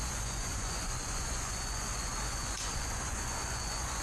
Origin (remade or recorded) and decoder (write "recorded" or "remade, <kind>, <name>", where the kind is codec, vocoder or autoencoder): remade, vocoder, Vocos